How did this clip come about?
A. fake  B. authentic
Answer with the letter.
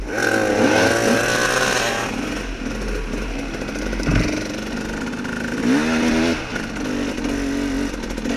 B